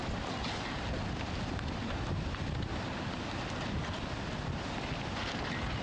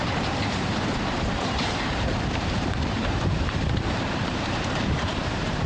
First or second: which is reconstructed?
second